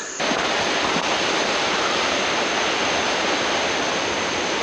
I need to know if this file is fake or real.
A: fake